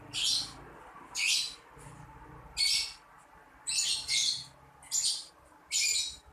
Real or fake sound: real